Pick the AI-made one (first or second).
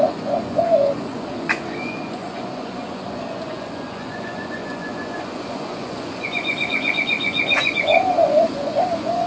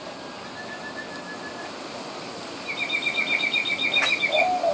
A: first